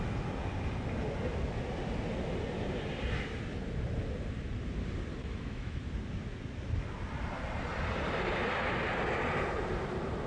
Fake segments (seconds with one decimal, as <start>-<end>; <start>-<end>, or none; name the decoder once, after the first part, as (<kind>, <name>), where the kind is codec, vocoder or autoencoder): 5.2-5.8 (autoencoder, DAC-VAE)